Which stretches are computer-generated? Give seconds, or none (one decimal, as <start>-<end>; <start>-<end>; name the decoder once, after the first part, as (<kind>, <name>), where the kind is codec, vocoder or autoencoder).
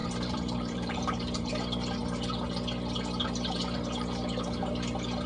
0.0-1.5 (vocoder, BigVGAN v2)